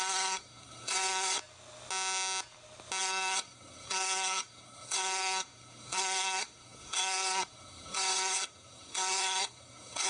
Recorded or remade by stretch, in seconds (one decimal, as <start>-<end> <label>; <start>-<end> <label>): 0.0-1.4 remade; 1.4-3.0 recorded; 3.0-10.1 remade